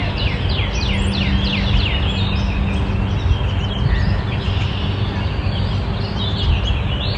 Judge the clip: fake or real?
real